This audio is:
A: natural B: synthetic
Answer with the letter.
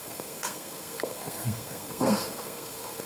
B